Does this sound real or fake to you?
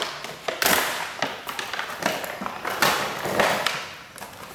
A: real